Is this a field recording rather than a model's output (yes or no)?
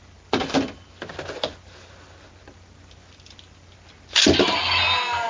yes